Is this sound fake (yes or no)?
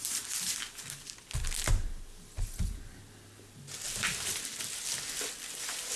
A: no